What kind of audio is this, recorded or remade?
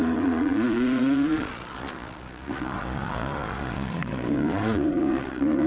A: remade